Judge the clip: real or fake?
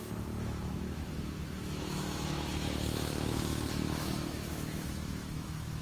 fake